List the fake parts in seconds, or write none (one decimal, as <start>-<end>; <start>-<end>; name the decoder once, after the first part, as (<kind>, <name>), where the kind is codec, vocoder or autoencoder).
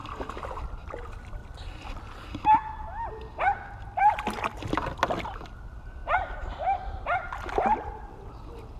none